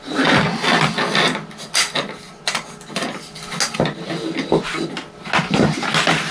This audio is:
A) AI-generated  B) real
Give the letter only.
B